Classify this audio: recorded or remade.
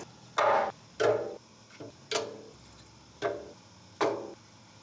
recorded